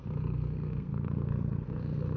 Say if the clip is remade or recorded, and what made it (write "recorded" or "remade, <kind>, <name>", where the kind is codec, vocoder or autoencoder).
remade, codec, SNAC